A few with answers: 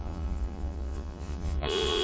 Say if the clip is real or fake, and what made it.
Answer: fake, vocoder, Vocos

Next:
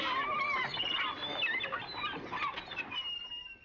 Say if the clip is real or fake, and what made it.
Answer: real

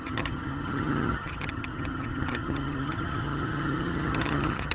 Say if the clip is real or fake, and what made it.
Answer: fake, vocoder, HiFi-GAN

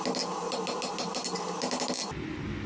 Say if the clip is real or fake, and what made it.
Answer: real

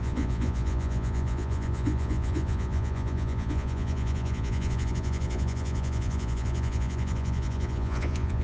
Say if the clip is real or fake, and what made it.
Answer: fake, vocoder, Vocos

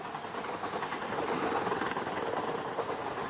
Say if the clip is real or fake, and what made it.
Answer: real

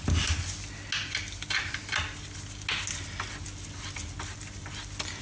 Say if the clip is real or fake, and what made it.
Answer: real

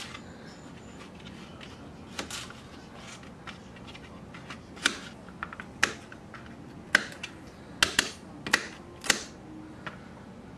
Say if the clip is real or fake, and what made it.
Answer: real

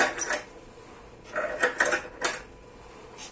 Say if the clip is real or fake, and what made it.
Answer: real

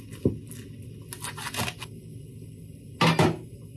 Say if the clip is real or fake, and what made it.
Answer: real